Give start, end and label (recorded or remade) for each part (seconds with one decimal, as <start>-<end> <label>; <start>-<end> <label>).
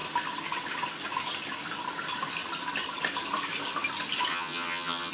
0.0-4.3 recorded; 4.3-5.1 remade